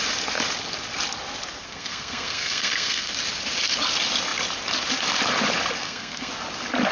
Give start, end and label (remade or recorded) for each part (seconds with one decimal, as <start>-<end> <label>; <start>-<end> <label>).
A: 0.0-1.6 recorded; 1.6-3.1 remade; 3.1-5.8 recorded; 5.8-6.3 remade; 6.3-6.9 recorded